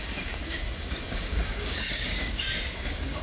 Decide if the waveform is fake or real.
fake